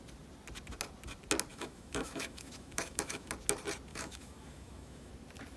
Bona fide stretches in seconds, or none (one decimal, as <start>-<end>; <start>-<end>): 0.0-1.5; 3.3-3.9; 5.1-5.6